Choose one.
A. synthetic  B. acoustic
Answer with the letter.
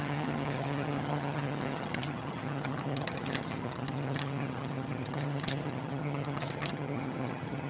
A